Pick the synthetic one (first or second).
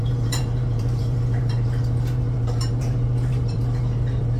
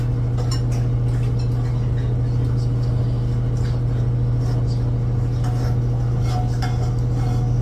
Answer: first